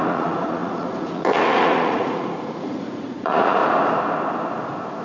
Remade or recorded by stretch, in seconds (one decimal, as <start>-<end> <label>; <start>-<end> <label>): 0.0-3.6 remade; 3.6-5.0 recorded